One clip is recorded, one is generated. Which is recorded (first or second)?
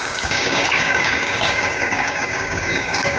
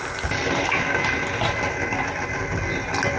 second